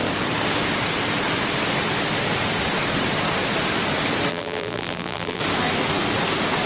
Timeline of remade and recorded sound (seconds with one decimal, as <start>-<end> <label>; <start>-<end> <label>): 0.0-4.3 recorded; 4.3-5.4 remade; 5.4-6.7 recorded